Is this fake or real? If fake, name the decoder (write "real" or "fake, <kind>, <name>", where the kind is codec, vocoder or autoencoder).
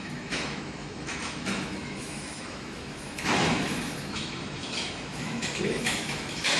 fake, autoencoder, DAC-VAE